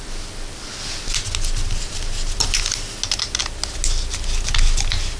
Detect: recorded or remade recorded